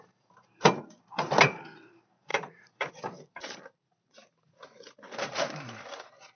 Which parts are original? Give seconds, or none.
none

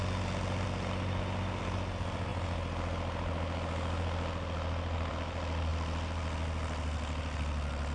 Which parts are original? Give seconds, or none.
0.0-7.9

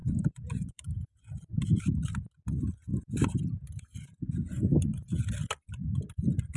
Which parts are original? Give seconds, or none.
1.2-2.9; 4.9-6.6

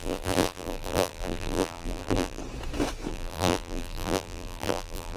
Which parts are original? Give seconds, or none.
2.4-3.1

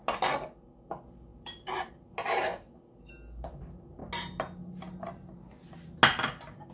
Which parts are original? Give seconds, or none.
0.0-1.3; 1.9-6.7